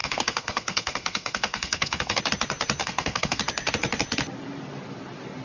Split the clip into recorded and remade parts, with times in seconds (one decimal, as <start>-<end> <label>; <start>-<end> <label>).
0.0-2.2 remade; 2.2-2.8 recorded; 2.8-3.4 remade; 3.4-5.4 recorded